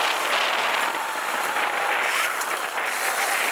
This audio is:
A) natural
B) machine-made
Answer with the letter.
A